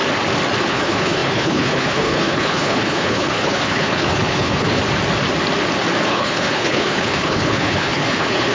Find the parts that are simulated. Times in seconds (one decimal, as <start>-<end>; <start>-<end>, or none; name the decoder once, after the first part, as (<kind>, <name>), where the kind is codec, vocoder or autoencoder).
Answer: 0.7-4.8 (codec, HILCodec); 6.1-8.5